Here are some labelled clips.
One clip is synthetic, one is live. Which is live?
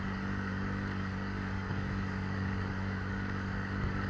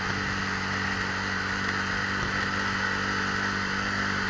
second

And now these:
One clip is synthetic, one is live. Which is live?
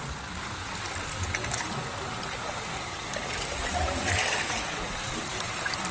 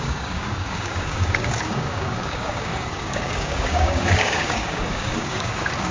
first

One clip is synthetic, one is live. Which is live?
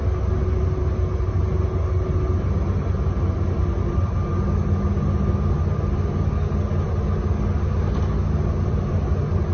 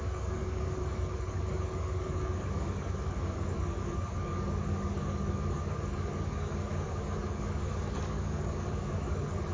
first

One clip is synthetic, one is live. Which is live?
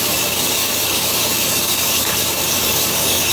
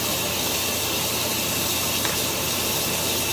second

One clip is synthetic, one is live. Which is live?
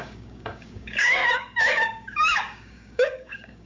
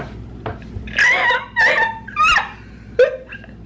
second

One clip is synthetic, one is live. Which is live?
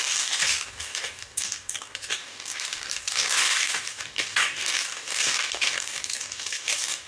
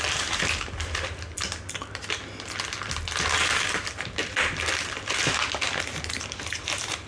second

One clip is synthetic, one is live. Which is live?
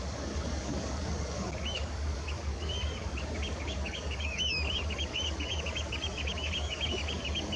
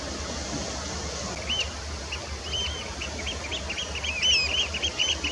second